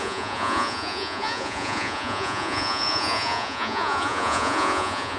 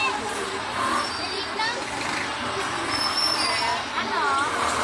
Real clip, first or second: second